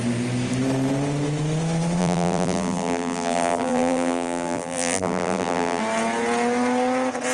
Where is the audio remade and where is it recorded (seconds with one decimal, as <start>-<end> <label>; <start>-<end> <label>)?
0.0-2.0 recorded; 2.0-5.8 remade; 5.8-7.3 recorded